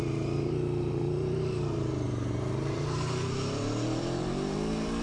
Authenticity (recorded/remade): remade